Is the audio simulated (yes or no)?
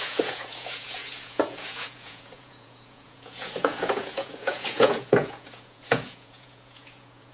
yes